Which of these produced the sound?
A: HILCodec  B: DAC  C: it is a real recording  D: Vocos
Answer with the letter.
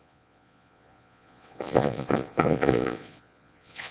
D